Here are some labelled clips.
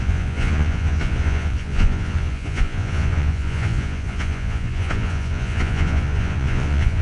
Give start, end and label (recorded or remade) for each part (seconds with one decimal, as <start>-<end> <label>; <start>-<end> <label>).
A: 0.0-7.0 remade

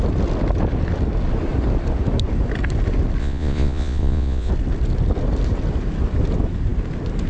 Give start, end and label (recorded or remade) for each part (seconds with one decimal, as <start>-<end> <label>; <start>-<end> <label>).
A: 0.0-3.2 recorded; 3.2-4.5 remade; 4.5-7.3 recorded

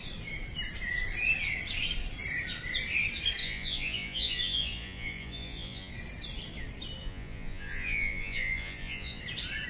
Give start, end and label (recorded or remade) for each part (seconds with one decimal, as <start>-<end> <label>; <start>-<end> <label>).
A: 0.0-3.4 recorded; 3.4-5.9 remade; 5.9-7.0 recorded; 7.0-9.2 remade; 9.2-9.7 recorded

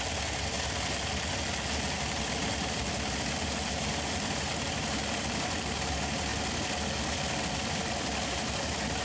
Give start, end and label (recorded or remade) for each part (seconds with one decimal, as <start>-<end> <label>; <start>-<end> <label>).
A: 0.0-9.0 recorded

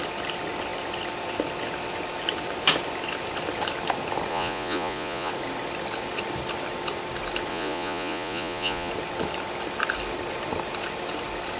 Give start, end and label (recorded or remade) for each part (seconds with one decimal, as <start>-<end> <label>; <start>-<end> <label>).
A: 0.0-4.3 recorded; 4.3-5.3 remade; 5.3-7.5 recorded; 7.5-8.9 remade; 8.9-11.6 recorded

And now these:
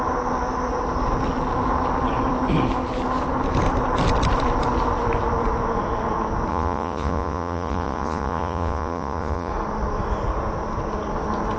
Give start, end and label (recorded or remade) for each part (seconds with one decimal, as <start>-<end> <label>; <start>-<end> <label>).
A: 0.0-6.5 recorded; 6.5-9.5 remade; 9.5-11.6 recorded